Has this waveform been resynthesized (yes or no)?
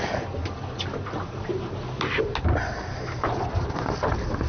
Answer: no